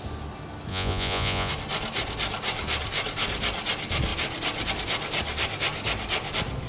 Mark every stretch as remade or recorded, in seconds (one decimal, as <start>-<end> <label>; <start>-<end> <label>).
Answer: 0.0-0.7 recorded; 0.7-1.5 remade; 1.5-6.7 recorded